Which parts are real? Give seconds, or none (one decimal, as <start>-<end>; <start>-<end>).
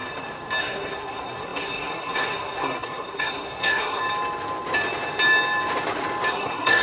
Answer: 0.0-0.6; 4.0-6.3